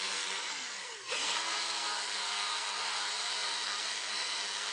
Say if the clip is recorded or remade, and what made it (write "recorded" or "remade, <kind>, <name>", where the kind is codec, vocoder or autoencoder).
remade, codec, SNAC